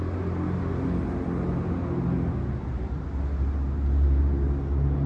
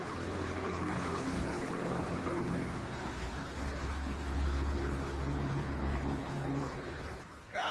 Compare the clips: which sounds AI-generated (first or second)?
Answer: second